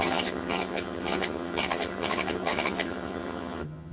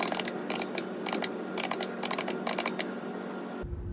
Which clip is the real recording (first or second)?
second